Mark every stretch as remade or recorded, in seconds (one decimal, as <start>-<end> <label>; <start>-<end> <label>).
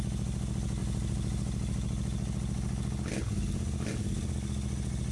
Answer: 0.0-5.1 recorded